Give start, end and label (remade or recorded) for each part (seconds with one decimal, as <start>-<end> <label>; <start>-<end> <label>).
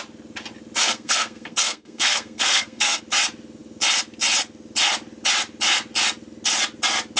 0.0-0.8 recorded; 0.8-3.0 remade; 3.0-7.2 recorded